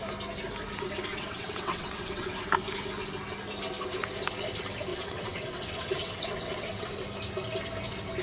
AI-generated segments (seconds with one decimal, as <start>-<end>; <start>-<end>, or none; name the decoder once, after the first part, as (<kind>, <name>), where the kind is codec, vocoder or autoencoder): 1.1-2.3 (vocoder, WaveNeXt); 4.9-6.9